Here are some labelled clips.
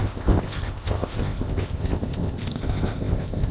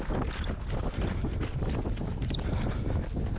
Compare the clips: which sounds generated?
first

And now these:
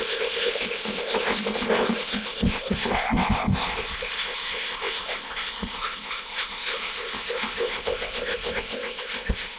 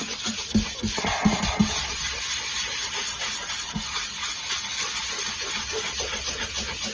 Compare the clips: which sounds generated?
first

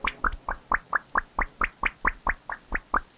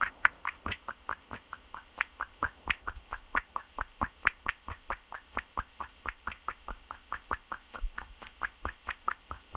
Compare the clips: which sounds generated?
second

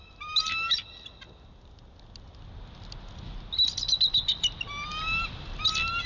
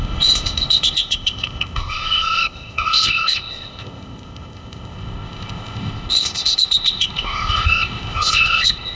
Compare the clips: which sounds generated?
second